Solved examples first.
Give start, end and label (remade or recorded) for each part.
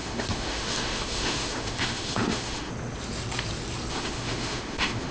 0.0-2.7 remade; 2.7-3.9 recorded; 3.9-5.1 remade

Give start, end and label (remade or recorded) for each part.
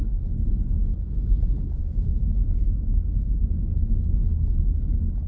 0.0-0.9 recorded; 0.9-1.4 remade; 1.4-1.8 recorded; 1.8-3.7 remade; 3.7-5.3 recorded